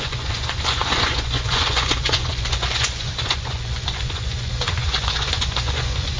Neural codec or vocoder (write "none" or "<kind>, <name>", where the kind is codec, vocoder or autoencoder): vocoder, Vocos